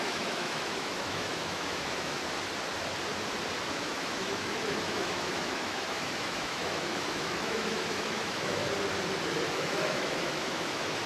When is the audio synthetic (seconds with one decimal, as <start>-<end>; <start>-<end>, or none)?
0.0-2.2; 3.7-8.6; 9.5-11.1

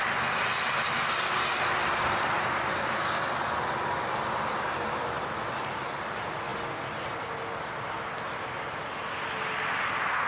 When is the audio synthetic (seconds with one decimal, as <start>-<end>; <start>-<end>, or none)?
none

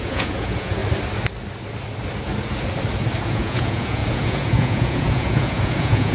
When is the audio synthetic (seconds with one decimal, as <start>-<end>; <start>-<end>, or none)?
0.0-0.8; 3.2-6.1

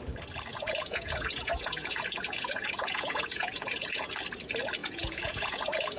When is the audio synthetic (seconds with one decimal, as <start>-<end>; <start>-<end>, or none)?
0.5-4.1; 4.8-6.0